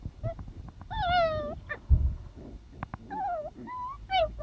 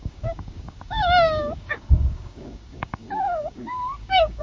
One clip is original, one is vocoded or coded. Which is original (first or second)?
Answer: first